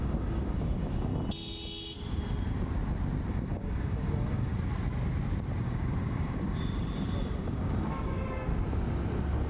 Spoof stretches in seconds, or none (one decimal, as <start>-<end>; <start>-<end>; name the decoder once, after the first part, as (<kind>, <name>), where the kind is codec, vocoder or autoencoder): 0.0-1.1 (codec, DAC); 3.3-4.5; 5.6-8.5